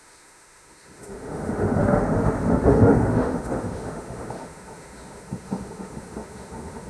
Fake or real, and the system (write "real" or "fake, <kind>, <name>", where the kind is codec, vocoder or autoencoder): fake, autoencoder, DAC-VAE